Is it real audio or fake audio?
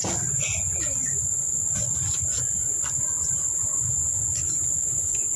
real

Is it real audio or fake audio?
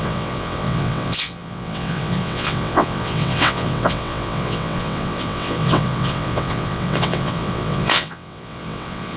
fake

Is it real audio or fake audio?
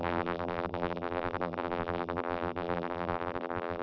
fake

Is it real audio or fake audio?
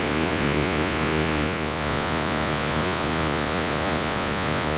fake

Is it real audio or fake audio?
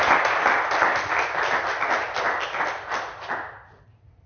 real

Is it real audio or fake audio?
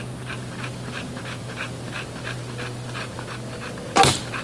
real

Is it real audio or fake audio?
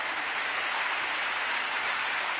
real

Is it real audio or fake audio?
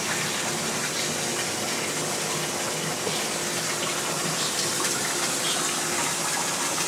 real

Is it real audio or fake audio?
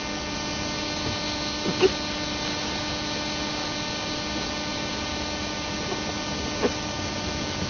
real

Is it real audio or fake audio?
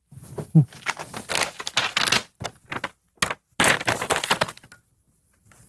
real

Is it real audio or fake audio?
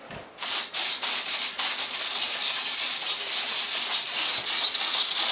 real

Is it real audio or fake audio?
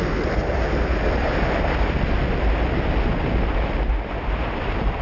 real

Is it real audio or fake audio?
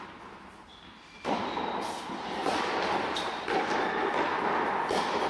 real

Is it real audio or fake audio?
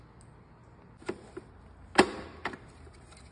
real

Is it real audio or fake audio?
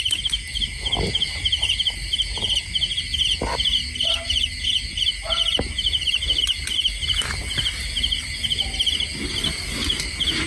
real